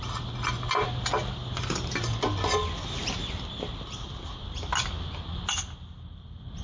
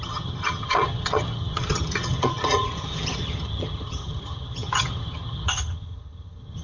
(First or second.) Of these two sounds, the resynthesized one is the second